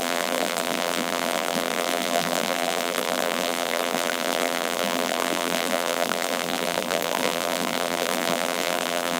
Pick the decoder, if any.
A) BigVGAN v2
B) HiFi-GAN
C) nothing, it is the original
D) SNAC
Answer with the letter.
A